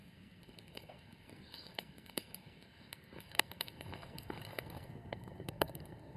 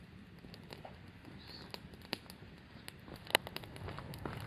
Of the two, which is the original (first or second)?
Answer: second